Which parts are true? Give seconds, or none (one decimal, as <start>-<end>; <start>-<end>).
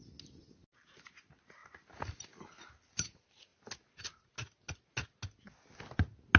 0.0-6.4